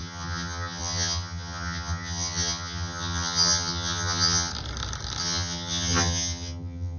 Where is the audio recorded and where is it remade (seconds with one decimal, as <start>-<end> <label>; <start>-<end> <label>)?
0.0-4.5 remade; 4.5-5.2 recorded; 5.2-7.0 remade